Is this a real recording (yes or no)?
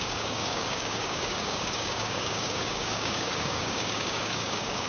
no